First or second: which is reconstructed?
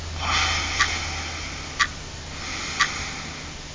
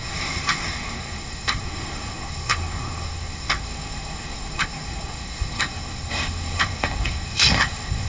second